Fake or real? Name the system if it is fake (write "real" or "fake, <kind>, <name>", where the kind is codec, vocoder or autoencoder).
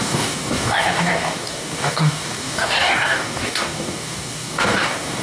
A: fake, codec, DAC